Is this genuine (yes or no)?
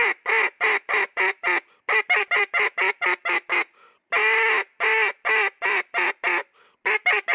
yes